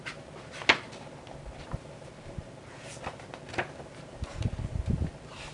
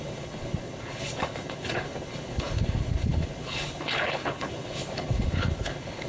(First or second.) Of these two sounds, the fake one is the second